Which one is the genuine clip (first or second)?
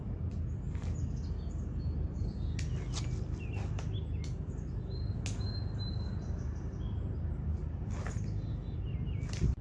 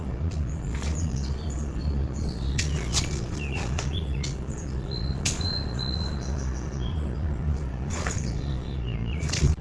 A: first